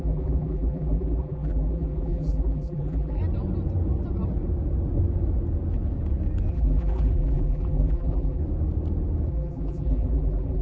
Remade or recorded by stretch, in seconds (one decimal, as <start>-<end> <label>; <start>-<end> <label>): 0.0-3.2 remade; 3.2-6.5 recorded; 6.5-8.4 remade; 8.4-9.3 recorded; 9.3-10.6 remade